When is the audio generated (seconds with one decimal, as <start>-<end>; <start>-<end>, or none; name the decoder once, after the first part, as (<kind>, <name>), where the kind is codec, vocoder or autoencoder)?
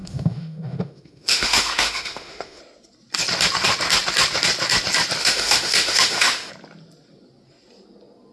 0.0-2.6 (autoencoder, DAC-VAE); 5.2-6.5